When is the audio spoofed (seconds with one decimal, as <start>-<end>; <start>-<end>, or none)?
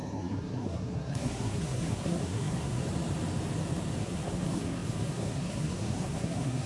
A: 0.0-2.8; 4.0-6.7